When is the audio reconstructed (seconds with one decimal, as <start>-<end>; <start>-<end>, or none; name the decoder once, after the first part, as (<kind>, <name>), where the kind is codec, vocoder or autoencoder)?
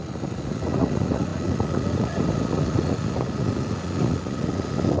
0.0-5.0 (vocoder, Vocos)